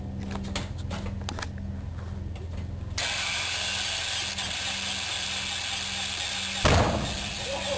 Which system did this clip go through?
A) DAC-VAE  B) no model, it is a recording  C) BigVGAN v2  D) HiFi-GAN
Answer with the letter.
B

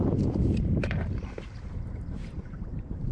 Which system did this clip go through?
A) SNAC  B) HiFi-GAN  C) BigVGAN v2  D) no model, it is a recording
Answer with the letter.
C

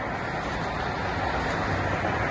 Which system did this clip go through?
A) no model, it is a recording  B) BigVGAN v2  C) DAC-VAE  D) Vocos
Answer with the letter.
A